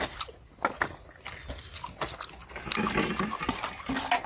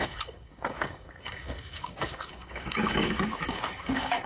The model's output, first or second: second